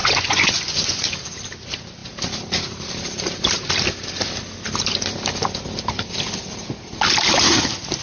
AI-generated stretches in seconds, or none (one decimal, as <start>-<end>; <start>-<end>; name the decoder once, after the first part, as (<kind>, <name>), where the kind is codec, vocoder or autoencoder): 0.0-1.0 (vocoder, Vocos)